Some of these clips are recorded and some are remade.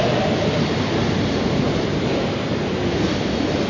remade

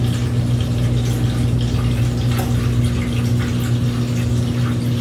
recorded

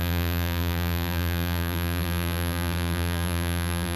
remade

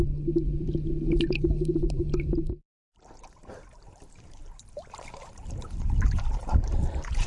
remade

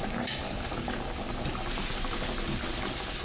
remade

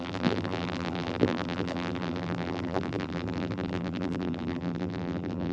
remade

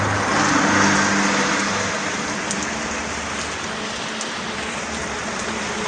recorded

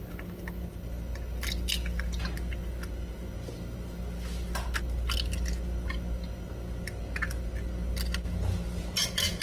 recorded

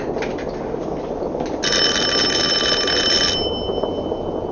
recorded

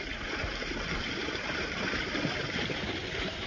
remade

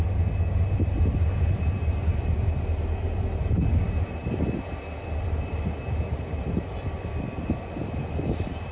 recorded